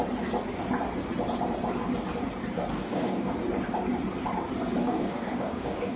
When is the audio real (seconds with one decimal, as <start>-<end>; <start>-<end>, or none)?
0.0-2.7; 3.3-4.8